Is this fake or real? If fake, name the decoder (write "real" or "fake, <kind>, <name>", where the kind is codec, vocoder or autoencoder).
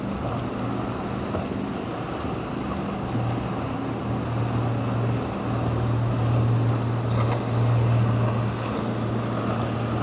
real